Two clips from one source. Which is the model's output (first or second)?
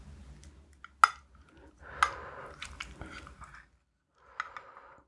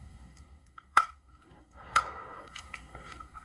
second